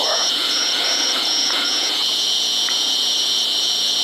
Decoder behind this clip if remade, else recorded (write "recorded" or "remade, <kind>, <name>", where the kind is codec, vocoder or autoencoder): remade, vocoder, Vocos